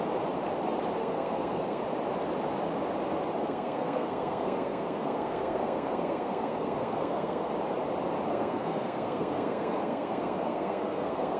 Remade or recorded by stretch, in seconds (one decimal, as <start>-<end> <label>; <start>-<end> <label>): 0.0-1.0 recorded; 1.0-1.8 remade; 1.8-3.4 recorded; 3.4-7.5 remade; 7.5-8.3 recorded; 8.3-11.4 remade